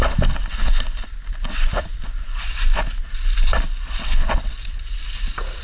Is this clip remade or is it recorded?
recorded